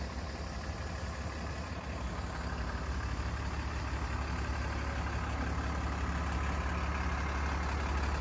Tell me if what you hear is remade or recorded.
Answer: recorded